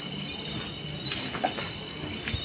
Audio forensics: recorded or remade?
recorded